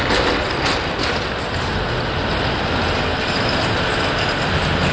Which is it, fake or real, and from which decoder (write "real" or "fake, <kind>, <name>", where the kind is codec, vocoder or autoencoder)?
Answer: real